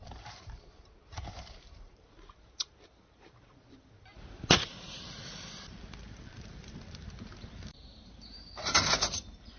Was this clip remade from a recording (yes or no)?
yes